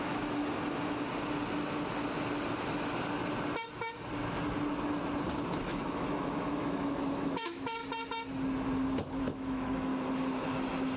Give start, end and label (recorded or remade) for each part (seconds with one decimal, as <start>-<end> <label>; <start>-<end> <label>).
0.0-0.4 remade; 0.4-5.6 recorded; 5.6-7.8 remade; 7.8-9.2 recorded; 9.2-9.9 remade; 9.9-11.0 recorded